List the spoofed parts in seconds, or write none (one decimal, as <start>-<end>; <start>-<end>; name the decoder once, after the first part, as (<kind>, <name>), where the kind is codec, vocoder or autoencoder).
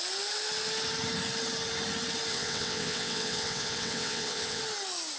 2.3-4.6 (vocoder, WaveNeXt)